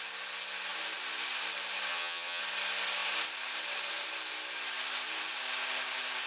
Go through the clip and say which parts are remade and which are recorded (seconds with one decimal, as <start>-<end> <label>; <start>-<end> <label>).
0.0-1.9 recorded; 1.9-2.4 remade; 2.4-6.3 recorded